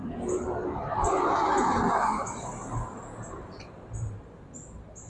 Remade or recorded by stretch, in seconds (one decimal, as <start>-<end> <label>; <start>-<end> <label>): 0.0-5.1 recorded